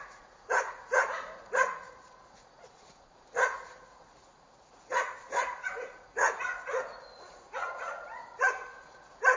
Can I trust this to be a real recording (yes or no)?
no